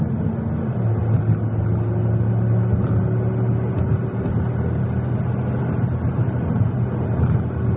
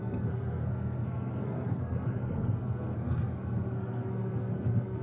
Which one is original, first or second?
first